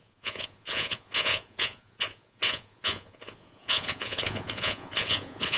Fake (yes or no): yes